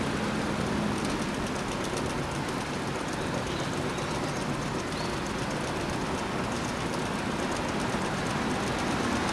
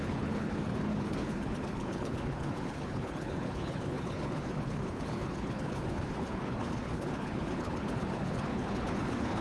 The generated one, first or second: second